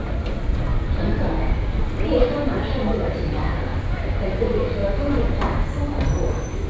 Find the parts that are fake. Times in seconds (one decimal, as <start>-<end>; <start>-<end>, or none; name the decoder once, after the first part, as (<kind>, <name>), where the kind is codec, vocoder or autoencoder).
none